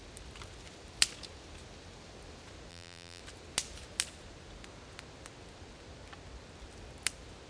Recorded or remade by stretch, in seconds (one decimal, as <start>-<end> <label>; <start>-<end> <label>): 0.0-2.7 recorded; 2.7-3.2 remade; 3.2-7.5 recorded